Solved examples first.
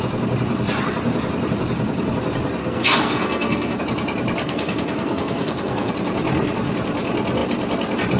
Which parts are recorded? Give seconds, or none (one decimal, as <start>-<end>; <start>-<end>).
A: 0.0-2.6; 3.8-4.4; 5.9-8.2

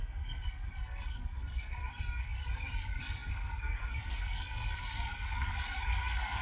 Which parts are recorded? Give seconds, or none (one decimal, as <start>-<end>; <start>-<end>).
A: none

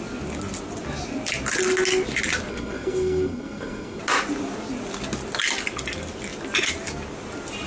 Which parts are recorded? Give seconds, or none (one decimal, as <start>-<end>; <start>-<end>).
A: 0.0-2.5; 4.0-7.7